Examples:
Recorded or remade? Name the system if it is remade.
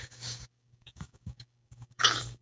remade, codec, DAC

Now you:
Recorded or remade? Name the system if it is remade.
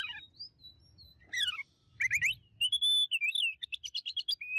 recorded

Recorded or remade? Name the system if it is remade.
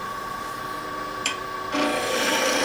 remade, vocoder, BigVGAN v2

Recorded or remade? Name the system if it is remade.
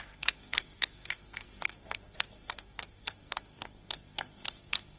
remade, codec, SNAC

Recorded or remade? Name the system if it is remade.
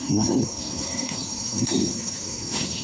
remade, codec, SNAC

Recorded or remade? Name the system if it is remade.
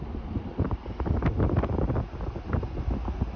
recorded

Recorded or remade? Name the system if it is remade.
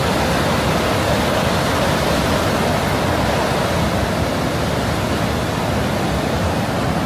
recorded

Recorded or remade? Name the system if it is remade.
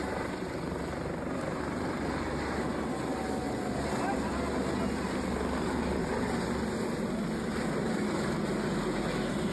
recorded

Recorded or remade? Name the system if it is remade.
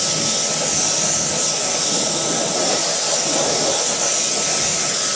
recorded